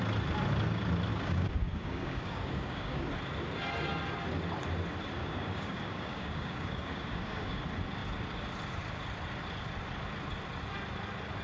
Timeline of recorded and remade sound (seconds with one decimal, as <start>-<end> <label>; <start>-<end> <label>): 0.0-1.1 recorded; 1.1-3.1 remade; 3.1-5.2 recorded; 5.2-7.6 remade; 7.6-11.4 recorded